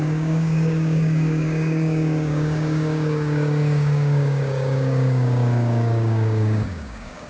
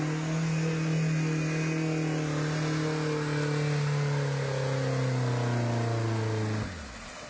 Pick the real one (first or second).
second